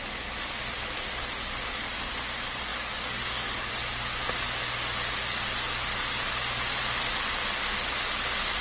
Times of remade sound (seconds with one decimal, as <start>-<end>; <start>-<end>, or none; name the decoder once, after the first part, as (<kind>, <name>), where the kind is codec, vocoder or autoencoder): 2.7-3.7 (codec, DAC)

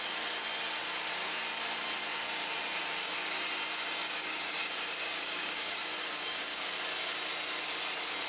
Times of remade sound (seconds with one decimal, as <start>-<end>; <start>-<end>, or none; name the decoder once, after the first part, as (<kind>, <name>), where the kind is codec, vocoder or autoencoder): 4.0-6.6 (codec, DAC)